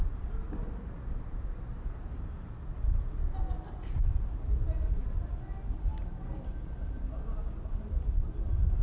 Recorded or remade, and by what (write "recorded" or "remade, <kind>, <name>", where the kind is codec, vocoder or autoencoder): recorded